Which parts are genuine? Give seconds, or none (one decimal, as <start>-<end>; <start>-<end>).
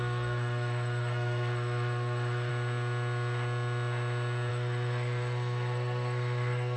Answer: 2.5-4.5